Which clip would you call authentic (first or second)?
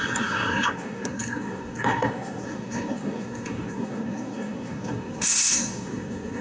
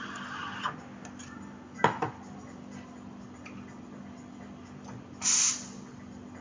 second